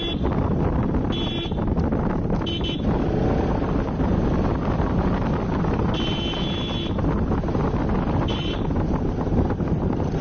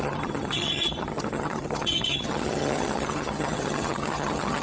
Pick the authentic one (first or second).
first